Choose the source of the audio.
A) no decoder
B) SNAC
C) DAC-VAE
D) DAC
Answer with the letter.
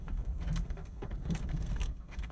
B